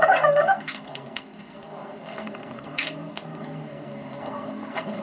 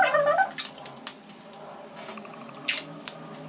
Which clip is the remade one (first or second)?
first